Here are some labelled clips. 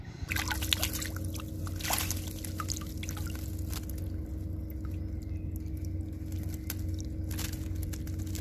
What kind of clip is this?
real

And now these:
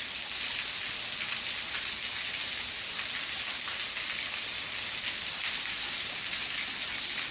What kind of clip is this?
real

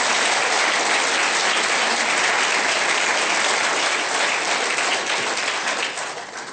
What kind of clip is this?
real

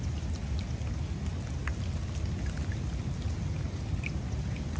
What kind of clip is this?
real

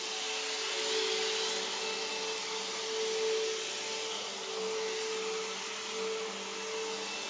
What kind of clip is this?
real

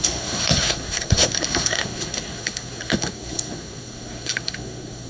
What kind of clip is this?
fake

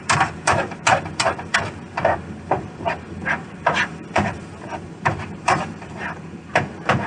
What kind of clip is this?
fake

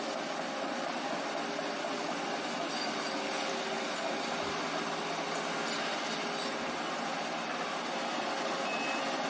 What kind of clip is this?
real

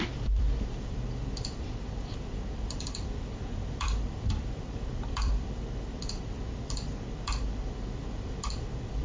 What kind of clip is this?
fake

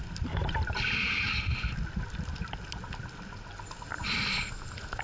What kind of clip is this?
real